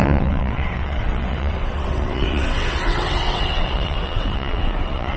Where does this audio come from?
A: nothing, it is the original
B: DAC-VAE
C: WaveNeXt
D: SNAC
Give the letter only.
C